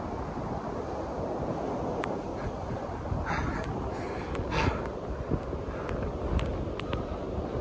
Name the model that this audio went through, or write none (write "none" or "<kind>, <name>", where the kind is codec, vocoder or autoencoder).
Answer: none